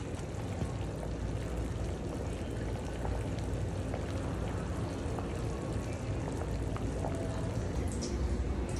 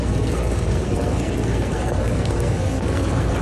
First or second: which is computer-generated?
second